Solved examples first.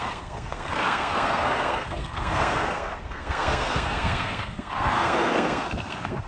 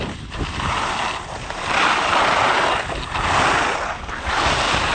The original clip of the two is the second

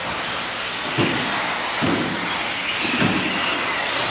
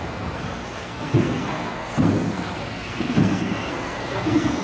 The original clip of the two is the first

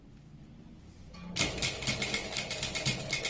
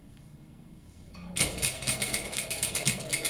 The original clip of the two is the first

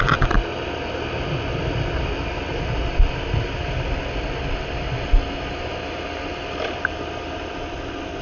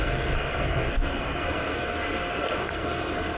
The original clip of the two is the first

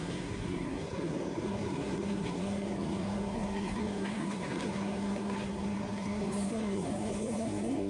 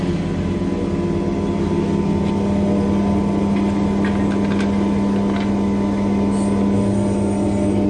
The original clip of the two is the second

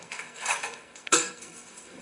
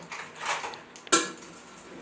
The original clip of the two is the second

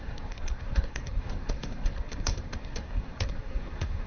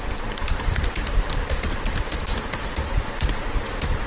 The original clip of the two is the second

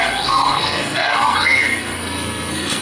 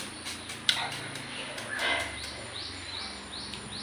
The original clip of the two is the second